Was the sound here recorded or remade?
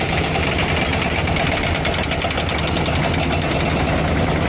recorded